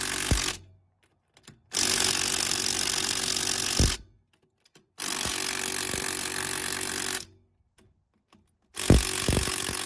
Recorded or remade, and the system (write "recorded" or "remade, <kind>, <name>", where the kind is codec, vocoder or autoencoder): recorded